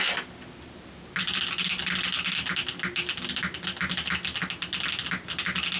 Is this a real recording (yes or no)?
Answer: yes